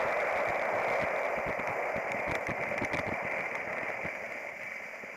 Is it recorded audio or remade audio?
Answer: recorded